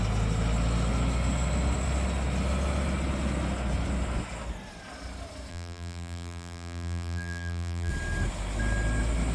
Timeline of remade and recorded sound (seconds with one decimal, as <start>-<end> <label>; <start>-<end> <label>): 0.0-5.5 recorded; 5.5-7.9 remade; 7.9-9.3 recorded